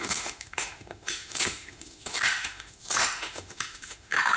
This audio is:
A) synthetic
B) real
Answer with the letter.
A